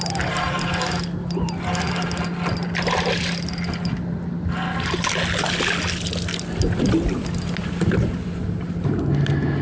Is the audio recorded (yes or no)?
yes